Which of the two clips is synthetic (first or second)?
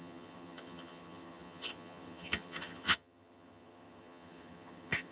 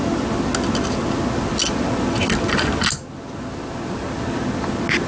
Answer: first